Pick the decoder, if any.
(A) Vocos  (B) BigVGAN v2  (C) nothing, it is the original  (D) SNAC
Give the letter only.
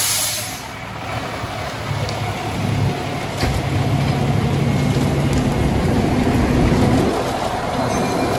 C